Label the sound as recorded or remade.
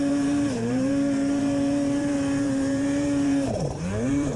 remade